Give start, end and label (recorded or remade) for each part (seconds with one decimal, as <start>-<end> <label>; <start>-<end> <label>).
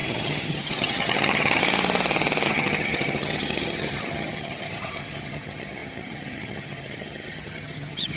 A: 0.0-1.6 remade; 1.6-2.5 recorded; 2.5-8.2 remade